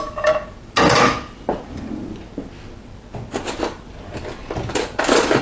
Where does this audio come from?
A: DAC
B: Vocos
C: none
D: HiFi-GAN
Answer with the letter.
C